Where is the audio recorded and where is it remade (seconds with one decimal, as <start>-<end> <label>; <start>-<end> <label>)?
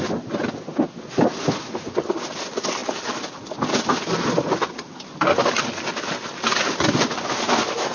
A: 0.0-7.9 recorded